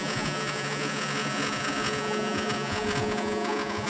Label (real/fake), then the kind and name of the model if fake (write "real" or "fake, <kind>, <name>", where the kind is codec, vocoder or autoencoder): fake, vocoder, Vocos